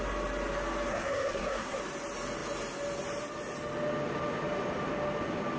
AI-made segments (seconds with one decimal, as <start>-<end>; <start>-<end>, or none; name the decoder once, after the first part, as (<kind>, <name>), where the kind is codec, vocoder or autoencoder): 0.9-1.8 (codec, SNAC)